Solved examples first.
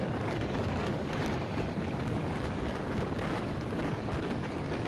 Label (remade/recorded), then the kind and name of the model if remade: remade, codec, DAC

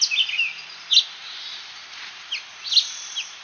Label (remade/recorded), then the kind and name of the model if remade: recorded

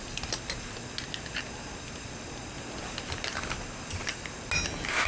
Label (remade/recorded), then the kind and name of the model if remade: recorded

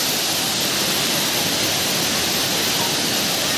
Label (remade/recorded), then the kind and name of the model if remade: recorded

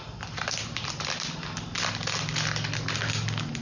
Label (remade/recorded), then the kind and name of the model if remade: recorded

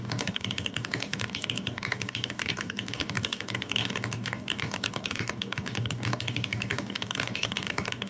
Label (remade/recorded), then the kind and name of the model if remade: remade, codec, DAC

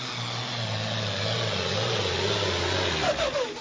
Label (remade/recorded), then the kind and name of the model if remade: recorded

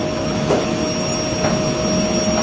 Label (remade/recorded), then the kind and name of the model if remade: recorded